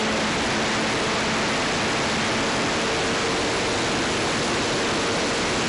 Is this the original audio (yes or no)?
yes